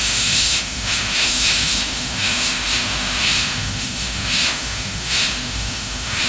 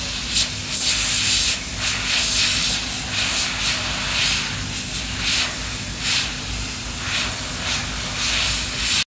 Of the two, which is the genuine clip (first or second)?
second